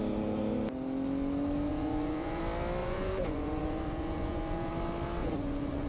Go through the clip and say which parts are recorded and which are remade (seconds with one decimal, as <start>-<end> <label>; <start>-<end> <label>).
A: 0.0-1.7 recorded; 1.7-2.4 remade; 2.4-2.8 recorded; 2.8-4.7 remade; 4.7-5.2 recorded; 5.2-5.9 remade